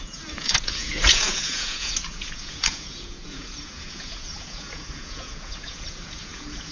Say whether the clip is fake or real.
fake